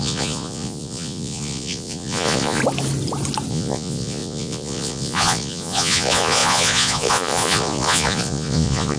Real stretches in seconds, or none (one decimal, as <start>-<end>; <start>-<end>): 2.6-3.5